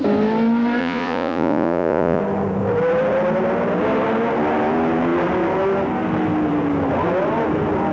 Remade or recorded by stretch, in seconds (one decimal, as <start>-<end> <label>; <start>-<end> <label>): 0.0-0.8 recorded; 0.8-2.2 remade; 2.2-7.9 recorded